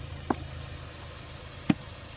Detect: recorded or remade recorded